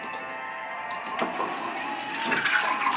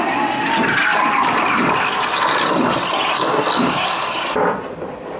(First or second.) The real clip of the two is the first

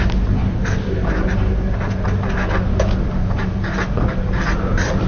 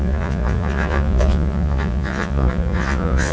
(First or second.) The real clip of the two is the first